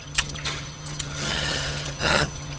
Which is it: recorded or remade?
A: remade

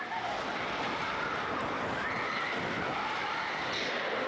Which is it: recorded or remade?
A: recorded